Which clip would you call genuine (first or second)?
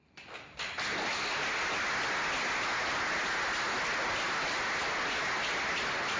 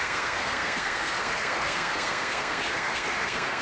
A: first